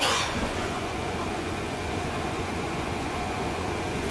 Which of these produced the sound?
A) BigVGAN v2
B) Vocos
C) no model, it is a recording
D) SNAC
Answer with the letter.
B